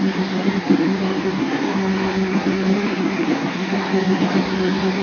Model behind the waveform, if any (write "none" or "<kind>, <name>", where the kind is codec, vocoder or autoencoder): codec, SNAC